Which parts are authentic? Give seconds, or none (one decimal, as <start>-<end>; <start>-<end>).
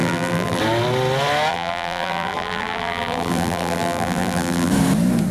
0.6-1.5; 4.7-5.3